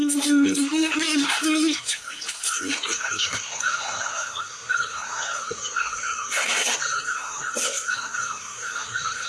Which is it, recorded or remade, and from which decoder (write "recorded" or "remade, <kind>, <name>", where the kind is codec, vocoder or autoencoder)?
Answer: remade, codec, SNAC